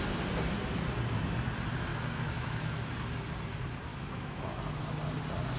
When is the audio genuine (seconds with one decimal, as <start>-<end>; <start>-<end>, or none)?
0.0-1.9; 2.9-3.9; 4.8-5.6